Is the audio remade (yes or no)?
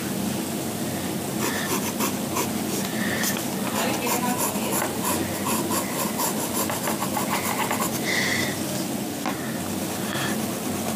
no